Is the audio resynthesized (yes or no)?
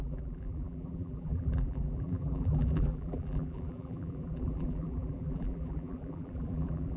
yes